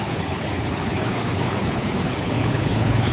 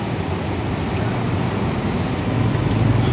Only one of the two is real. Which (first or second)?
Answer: second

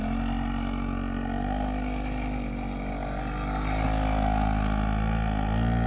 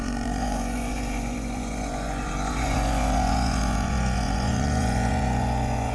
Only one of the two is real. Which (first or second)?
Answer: first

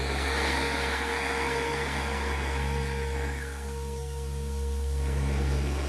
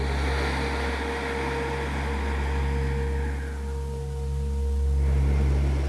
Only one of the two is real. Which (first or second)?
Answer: second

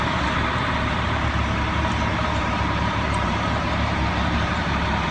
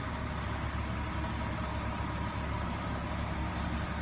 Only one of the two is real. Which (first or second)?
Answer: second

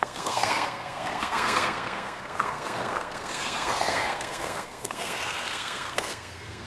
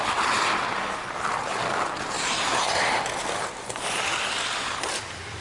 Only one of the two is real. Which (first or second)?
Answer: second